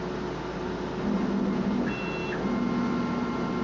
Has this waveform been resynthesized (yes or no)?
no